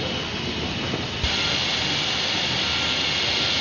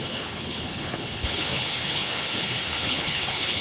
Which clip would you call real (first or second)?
first